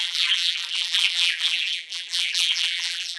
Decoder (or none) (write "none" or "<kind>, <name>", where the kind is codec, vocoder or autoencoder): vocoder, BigVGAN v2